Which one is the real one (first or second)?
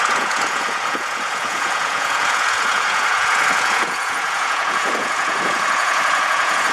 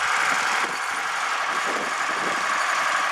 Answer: second